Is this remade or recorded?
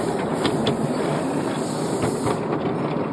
recorded